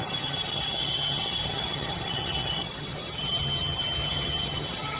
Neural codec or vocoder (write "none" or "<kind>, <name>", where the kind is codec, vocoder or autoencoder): vocoder, HiFi-GAN